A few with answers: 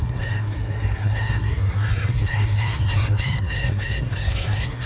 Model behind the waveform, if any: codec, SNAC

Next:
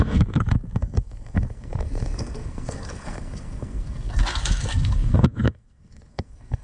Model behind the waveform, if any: codec, SNAC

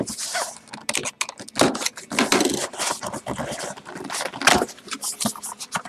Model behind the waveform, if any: none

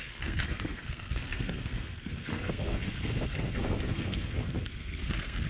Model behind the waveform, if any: codec, SNAC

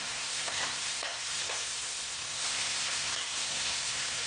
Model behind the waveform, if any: codec, SNAC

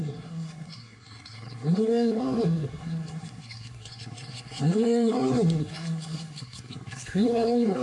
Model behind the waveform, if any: codec, SNAC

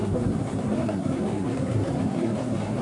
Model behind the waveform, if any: codec, SNAC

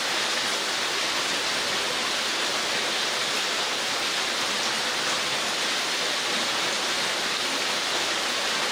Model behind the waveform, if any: none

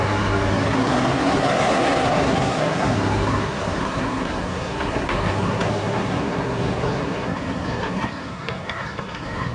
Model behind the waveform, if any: codec, SNAC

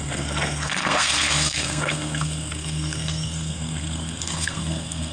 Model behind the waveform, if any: codec, SNAC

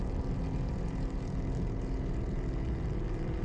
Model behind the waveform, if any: none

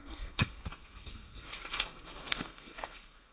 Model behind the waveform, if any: codec, SNAC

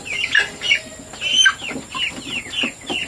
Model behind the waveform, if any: none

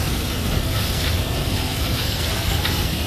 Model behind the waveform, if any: codec, SNAC